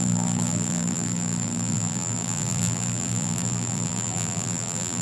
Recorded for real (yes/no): no